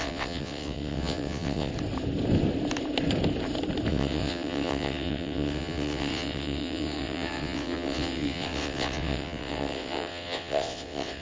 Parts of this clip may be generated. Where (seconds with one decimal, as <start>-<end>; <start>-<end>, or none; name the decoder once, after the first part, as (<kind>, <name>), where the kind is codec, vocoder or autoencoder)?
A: 0.0-1.7 (vocoder, WaveNeXt); 3.9-11.2